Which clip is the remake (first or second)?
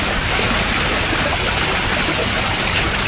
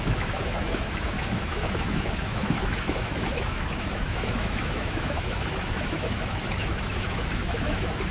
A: second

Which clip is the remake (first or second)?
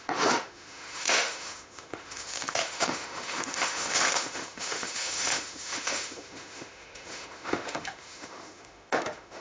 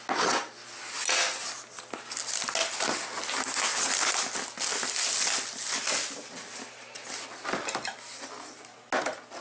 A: first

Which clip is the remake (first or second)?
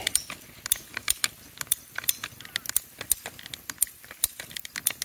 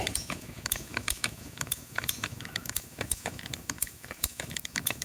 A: second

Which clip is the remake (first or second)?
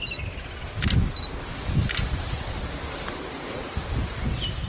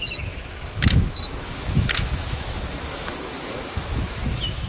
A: second